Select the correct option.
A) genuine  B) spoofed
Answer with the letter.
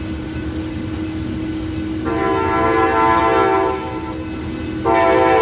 A